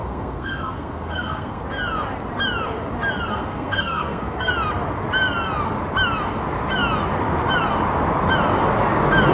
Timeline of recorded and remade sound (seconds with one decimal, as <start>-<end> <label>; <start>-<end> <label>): 0.0-1.6 remade; 1.6-3.3 recorded; 3.3-4.5 remade; 4.5-9.3 recorded